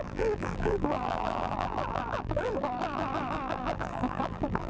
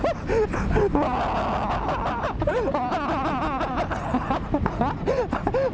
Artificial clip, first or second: first